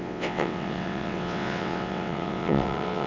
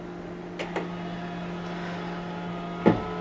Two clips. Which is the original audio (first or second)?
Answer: second